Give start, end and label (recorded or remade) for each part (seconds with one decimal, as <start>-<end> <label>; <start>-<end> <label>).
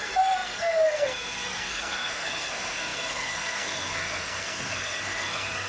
0.0-5.7 remade